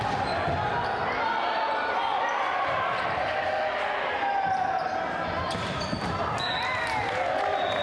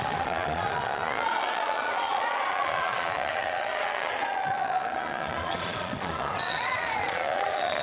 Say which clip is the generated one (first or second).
second